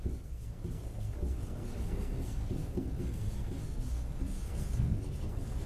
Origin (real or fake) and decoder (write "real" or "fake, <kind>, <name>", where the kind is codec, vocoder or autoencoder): fake, codec, SNAC